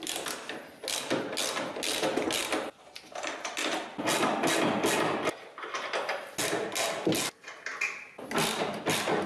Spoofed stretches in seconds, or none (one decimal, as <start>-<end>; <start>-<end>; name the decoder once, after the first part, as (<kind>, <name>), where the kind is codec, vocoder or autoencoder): none